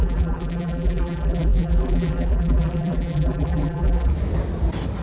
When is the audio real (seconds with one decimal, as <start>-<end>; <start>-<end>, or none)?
4.1-5.0

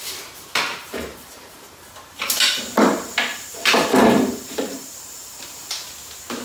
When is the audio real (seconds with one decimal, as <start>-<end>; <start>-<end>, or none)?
0.0-0.8; 1.8-3.3; 5.9-6.4

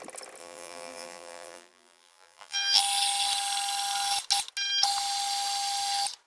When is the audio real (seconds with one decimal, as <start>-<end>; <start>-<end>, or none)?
0.0-0.4; 2.8-6.3